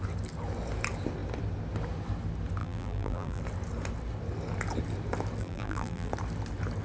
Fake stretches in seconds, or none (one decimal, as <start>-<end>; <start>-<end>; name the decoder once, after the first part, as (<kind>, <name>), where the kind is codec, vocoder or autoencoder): 2.6-3.4 (vocoder, BigVGAN v2); 5.4-6.1